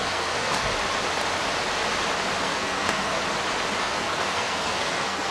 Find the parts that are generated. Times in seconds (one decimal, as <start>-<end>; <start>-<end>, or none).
0.0-0.7; 2.4-3.2; 3.8-5.3